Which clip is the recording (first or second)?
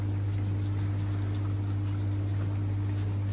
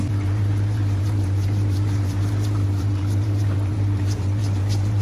first